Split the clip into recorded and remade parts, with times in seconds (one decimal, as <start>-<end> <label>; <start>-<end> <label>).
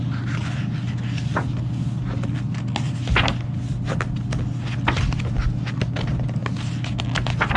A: 0.0-7.6 recorded